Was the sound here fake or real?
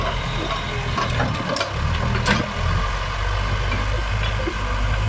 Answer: real